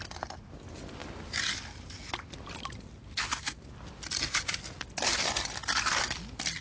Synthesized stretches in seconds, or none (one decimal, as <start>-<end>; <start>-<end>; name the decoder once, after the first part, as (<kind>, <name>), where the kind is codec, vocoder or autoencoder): none

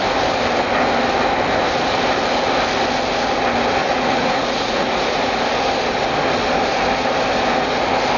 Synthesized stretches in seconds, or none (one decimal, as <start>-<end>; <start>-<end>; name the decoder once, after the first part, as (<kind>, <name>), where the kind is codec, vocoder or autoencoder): 3.8-5.4 (vocoder, Vocos)